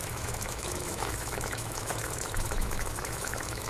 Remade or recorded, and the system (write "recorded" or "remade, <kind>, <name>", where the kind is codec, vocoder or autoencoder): remade, autoencoder, DAC-VAE